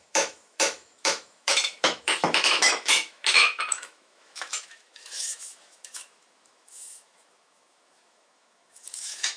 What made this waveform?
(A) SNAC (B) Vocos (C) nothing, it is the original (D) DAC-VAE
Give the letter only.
D